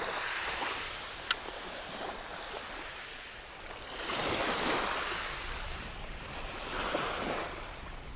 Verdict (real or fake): real